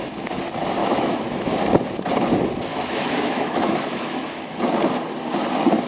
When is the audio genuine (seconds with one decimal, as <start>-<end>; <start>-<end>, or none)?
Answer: 0.0-0.8; 1.5-2.7; 4.6-5.9